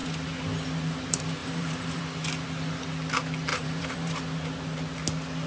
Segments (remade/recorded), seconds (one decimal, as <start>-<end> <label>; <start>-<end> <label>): 0.0-1.4 recorded; 1.4-2.0 remade; 2.0-3.5 recorded; 3.5-4.1 remade; 4.1-5.5 recorded